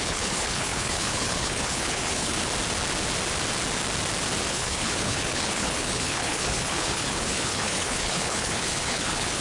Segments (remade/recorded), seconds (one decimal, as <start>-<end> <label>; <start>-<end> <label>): 0.0-2.4 remade; 2.4-4.5 recorded; 4.5-9.4 remade